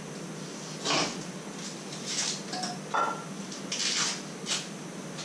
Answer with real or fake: real